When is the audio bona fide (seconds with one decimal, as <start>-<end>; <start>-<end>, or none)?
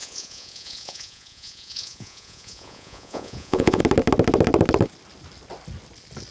3.8-6.3